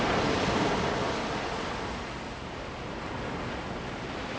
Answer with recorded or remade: recorded